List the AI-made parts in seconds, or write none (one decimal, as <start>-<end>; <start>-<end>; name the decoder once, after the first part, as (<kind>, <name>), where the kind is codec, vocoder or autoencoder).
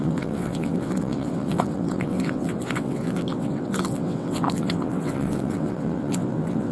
0.0-6.7 (vocoder, WaveNeXt)